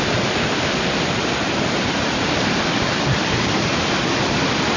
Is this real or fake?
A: real